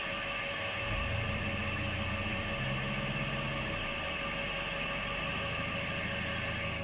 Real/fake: real